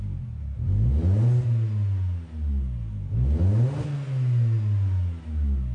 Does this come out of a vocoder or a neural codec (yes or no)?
no